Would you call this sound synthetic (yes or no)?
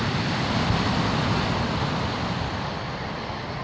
no